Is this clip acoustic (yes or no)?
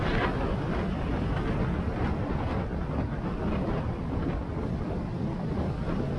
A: yes